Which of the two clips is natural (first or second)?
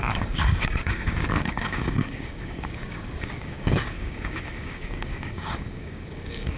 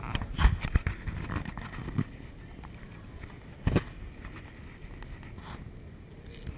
second